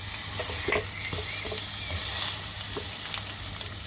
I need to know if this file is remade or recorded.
recorded